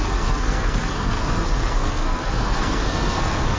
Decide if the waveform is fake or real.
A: fake